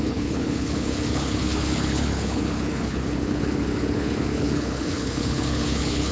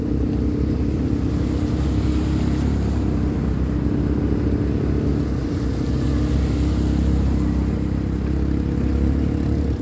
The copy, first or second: first